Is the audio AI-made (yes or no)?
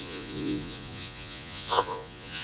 yes